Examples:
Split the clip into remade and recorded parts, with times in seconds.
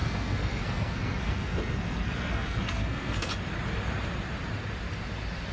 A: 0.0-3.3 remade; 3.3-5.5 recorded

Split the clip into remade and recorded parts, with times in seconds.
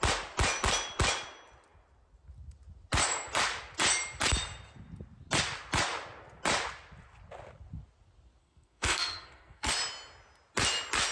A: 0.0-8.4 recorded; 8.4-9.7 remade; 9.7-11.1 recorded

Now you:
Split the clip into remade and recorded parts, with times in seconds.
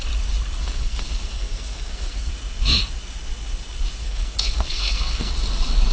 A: 0.0-0.6 recorded; 0.6-2.3 remade; 2.3-4.0 recorded; 4.0-5.3 remade; 5.3-5.9 recorded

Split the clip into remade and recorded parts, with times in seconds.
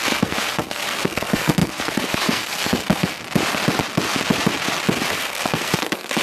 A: 0.0-3.2 remade; 3.2-5.1 recorded; 5.1-6.2 remade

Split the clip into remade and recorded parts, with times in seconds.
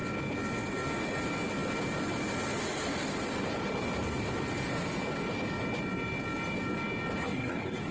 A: 0.0-7.2 recorded; 7.2-7.9 remade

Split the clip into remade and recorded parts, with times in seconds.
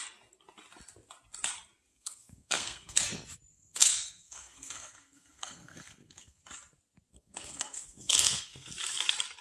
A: 0.0-1.9 recorded; 1.9-3.0 remade; 3.0-3.5 recorded; 3.5-6.4 remade; 6.4-7.1 recorded; 7.1-8.7 remade; 8.7-9.4 recorded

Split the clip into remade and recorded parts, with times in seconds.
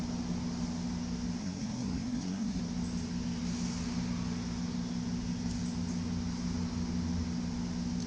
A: 0.0-1.4 recorded; 1.4-2.6 remade; 2.6-8.1 recorded